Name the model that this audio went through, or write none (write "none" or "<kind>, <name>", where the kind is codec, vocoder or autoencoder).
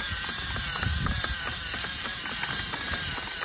none